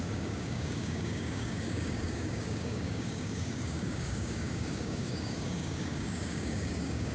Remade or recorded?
remade